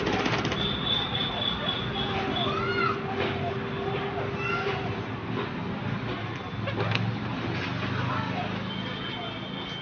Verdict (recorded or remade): recorded